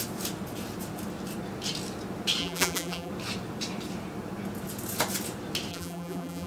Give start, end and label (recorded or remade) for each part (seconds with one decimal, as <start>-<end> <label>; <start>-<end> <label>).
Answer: 0.0-2.4 recorded; 2.4-3.1 remade; 3.1-5.7 recorded; 5.7-6.5 remade